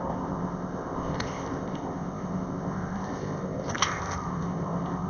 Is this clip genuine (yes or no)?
no